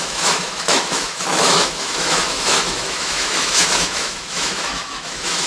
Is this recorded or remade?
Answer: remade